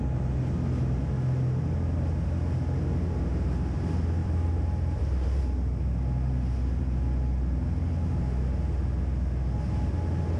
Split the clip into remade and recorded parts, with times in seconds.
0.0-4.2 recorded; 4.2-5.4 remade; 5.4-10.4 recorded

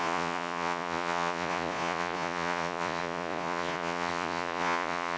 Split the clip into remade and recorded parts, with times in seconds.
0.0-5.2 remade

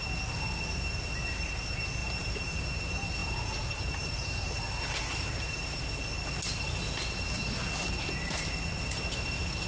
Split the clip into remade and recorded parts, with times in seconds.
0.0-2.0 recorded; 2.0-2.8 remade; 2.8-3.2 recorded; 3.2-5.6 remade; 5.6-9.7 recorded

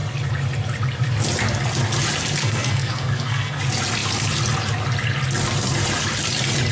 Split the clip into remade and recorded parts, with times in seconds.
0.0-2.4 recorded; 2.4-3.6 remade; 3.6-6.7 recorded

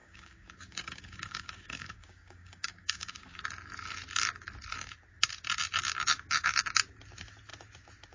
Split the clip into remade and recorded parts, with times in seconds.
0.0-3.4 remade; 3.4-8.1 recorded

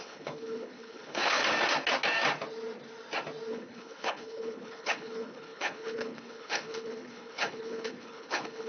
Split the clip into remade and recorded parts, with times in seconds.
0.0-1.4 remade; 1.4-3.5 recorded; 3.5-8.7 remade

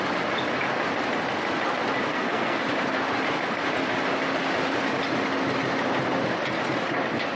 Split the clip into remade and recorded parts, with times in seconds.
0.0-2.1 recorded; 2.1-2.6 remade; 2.6-7.4 recorded